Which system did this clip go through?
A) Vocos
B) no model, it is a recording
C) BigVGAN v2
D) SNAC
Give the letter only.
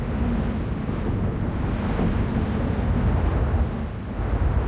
B